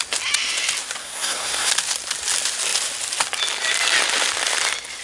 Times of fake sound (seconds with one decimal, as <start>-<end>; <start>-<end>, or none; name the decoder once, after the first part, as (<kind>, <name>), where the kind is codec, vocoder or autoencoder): 1.0-1.7 (codec, SNAC)